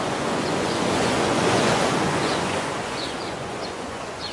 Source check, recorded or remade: remade